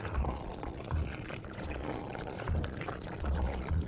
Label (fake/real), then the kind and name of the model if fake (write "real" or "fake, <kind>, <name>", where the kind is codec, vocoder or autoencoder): fake, vocoder, Vocos